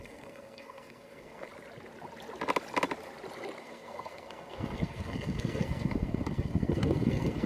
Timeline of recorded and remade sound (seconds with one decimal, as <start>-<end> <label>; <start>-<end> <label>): 0.0-1.5 remade; 1.5-3.6 recorded; 3.6-7.5 remade